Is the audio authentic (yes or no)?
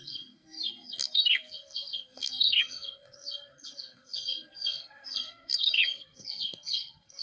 no